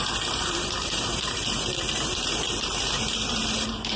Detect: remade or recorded remade